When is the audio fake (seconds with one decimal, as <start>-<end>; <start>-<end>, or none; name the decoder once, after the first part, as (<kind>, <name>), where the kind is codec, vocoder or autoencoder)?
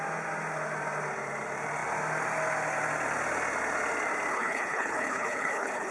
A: 4.3-5.9 (codec, HILCodec)